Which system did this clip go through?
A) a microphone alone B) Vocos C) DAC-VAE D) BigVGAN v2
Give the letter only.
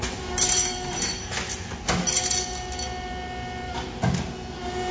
A